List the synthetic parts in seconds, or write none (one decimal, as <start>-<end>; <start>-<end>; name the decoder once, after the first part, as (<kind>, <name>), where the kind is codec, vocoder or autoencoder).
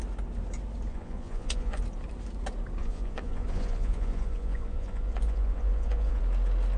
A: 0.9-1.8 (vocoder, Vocos); 2.8-6.2